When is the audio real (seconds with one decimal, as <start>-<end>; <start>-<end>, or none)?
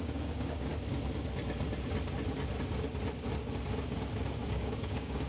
0.7-3.9